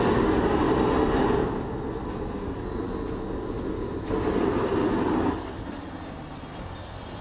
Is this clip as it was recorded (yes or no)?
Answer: yes